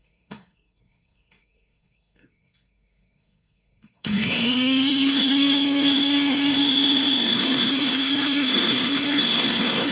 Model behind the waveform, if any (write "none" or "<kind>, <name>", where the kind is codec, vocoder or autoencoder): codec, SNAC